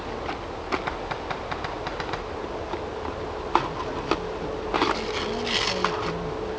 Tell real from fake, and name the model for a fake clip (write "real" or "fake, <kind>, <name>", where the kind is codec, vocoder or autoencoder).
real